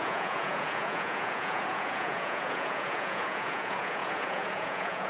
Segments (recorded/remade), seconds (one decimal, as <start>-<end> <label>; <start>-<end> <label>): 0.0-5.1 remade